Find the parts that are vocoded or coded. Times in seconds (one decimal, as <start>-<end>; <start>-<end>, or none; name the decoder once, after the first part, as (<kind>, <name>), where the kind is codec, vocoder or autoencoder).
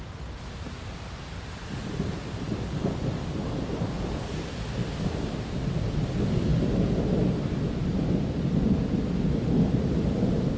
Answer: none